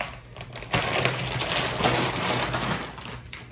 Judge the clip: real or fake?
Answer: real